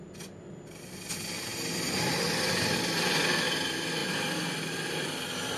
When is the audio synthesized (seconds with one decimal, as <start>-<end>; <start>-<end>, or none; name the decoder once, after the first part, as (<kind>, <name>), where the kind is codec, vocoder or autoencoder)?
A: none